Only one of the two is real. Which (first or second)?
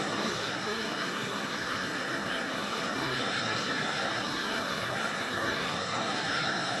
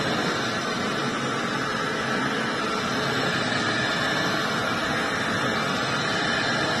second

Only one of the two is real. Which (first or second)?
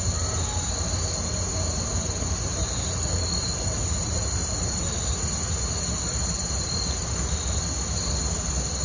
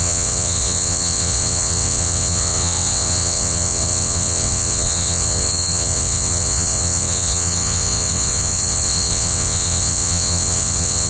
first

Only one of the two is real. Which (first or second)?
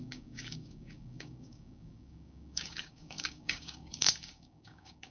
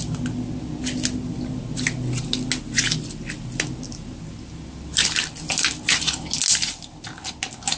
second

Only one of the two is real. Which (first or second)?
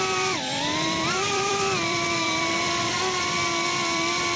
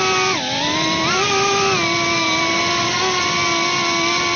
second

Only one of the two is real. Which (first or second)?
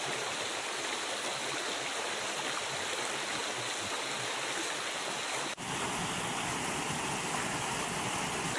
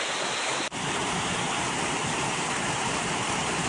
first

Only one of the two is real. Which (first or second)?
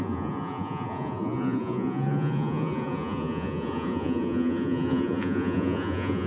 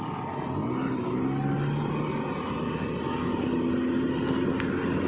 second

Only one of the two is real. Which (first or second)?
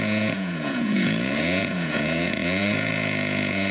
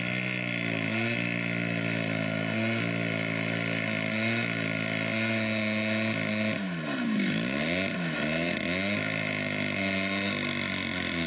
second